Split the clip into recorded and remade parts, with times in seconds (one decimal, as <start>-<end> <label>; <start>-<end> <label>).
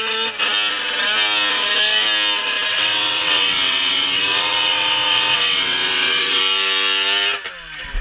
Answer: 0.0-2.7 recorded; 2.7-6.4 remade; 6.4-8.0 recorded